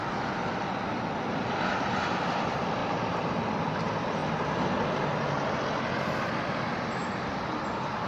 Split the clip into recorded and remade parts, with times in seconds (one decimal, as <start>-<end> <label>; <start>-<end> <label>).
0.0-1.3 recorded; 1.3-2.8 remade; 2.8-3.7 recorded; 3.7-4.2 remade; 4.2-6.3 recorded; 6.3-8.1 remade